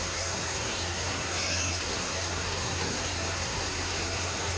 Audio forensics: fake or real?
fake